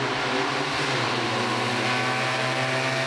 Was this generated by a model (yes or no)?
no